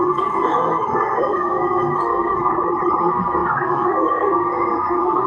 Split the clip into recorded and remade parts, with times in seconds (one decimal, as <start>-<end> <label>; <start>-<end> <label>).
0.0-2.5 remade; 2.5-3.0 recorded; 3.0-5.3 remade